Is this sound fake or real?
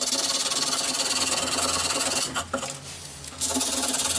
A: real